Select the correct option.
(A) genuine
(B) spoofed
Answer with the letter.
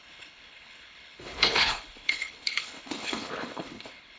B